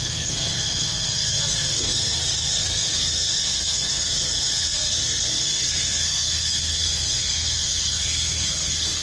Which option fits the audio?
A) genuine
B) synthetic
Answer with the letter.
B